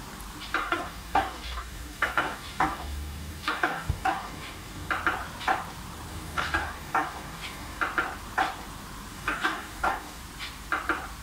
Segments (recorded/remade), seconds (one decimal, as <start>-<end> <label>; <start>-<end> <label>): 0.0-0.6 recorded; 0.6-4.9 remade; 4.9-6.1 recorded; 6.1-7.8 remade; 7.8-9.1 recorded; 9.1-10.2 remade; 10.2-11.2 recorded